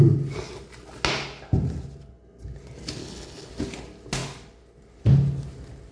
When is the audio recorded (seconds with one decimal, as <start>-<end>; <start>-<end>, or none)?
0.0-3.0; 3.5-5.9